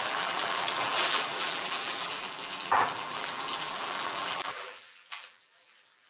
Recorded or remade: remade